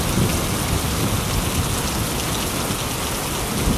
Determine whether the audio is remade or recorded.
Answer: recorded